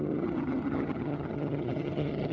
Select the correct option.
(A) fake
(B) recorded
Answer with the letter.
A